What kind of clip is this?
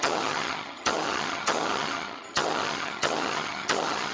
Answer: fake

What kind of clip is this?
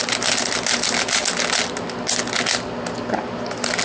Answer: real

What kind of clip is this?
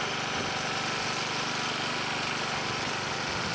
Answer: real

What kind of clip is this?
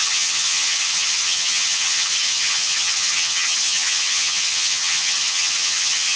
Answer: fake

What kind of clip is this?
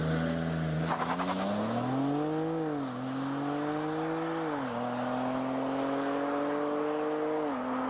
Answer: real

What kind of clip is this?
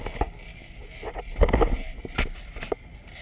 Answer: real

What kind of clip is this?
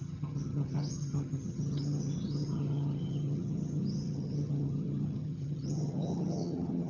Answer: fake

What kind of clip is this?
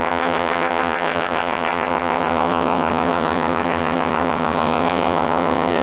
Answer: fake